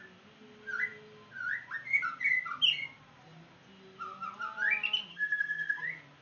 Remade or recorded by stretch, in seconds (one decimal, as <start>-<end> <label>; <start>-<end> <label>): 0.0-5.1 recorded; 5.1-5.8 remade; 5.8-6.2 recorded